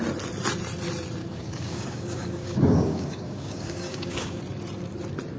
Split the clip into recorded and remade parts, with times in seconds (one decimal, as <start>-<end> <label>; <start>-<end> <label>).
0.0-1.2 recorded; 1.2-4.4 remade; 4.4-5.4 recorded